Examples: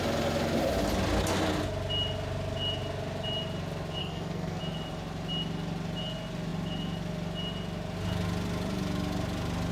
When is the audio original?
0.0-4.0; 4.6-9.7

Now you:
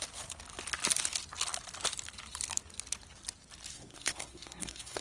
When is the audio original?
0.0-3.7

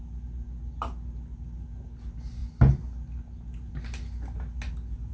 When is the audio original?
0.0-5.1

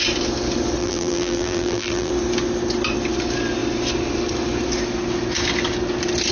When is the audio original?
0.0-0.8; 2.1-6.3

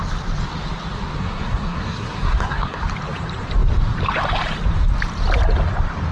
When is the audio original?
0.0-1.2; 2.8-6.1

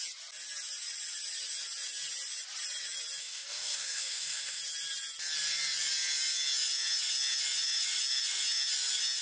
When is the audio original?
0.0-3.2; 4.6-9.2

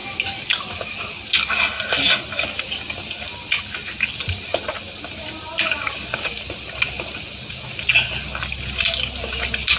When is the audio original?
0.0-9.8